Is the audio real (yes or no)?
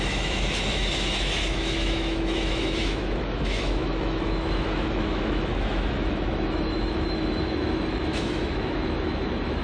no